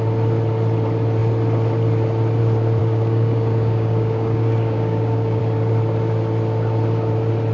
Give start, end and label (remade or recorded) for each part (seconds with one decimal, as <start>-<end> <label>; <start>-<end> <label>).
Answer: 0.0-2.8 recorded; 2.8-5.4 remade; 5.4-7.5 recorded